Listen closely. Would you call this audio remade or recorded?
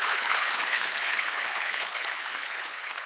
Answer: remade